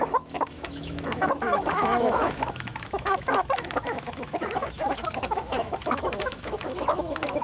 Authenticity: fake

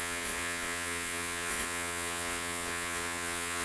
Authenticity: fake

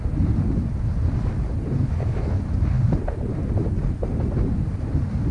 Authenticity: real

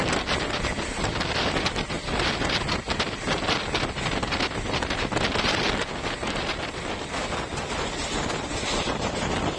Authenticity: real